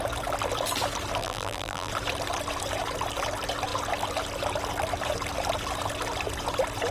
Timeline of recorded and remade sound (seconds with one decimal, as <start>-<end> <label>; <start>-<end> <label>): 0.0-1.2 recorded; 1.2-1.9 remade; 1.9-6.9 recorded

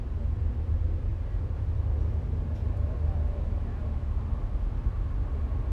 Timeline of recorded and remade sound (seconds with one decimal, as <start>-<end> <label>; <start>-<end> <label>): 0.0-5.7 recorded

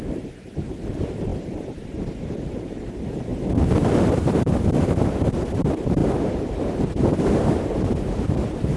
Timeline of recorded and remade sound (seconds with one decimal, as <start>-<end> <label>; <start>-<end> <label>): 0.0-1.3 remade; 1.3-2.3 recorded; 2.3-3.3 remade; 3.3-4.0 recorded; 4.0-8.8 remade